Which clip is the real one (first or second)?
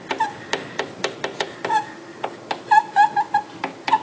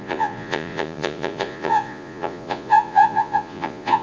first